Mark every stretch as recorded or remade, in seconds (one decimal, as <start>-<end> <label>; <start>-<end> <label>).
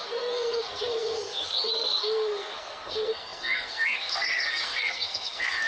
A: 0.0-5.7 remade